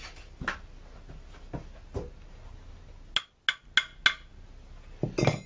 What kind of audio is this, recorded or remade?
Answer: recorded